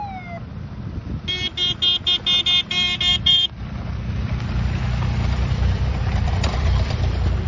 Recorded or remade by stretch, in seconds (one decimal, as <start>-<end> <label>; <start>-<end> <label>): 0.0-3.1 recorded; 3.1-7.0 remade; 7.0-7.5 recorded